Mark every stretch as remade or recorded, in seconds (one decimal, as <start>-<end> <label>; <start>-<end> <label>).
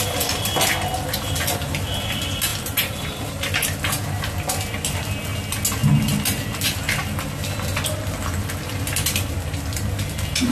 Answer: 0.0-2.5 recorded; 2.5-3.1 remade; 3.1-10.5 recorded